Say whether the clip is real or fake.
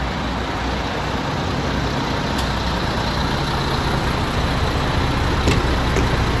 real